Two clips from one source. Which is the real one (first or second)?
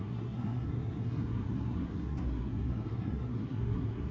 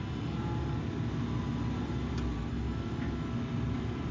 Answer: second